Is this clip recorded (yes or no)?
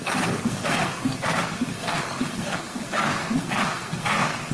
no